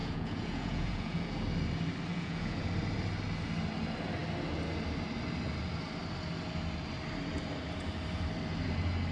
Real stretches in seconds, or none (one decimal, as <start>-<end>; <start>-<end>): 1.4-2.1; 2.7-9.1